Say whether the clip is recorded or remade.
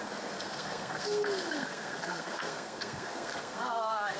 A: remade